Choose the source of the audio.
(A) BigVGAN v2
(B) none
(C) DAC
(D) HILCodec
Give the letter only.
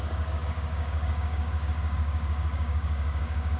C